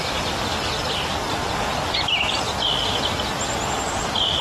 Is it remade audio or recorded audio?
recorded